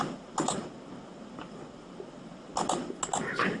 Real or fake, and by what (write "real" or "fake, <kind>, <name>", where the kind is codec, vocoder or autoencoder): real